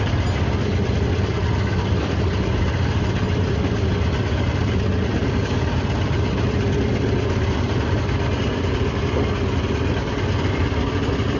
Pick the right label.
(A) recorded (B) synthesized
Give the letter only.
A